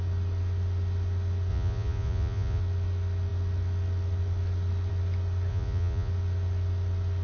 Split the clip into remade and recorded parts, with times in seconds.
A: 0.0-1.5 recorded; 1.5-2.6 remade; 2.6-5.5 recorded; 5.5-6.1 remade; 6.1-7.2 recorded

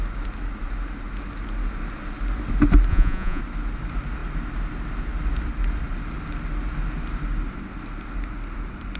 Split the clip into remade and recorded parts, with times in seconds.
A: 0.0-2.9 recorded; 2.9-3.4 remade; 3.4-9.0 recorded

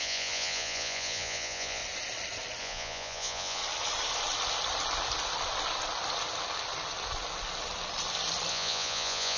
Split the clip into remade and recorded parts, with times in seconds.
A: 0.0-1.8 remade; 1.8-2.6 recorded; 2.6-3.6 remade; 3.6-8.5 recorded; 8.5-9.4 remade

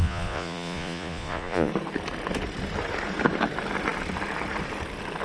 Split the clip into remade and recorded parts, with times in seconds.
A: 0.0-1.7 remade; 1.7-5.2 recorded

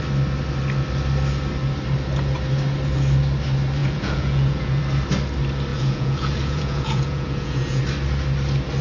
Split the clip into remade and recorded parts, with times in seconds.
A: 0.0-3.8 recorded; 3.8-4.8 remade; 4.8-5.7 recorded; 5.7-7.8 remade; 7.8-8.8 recorded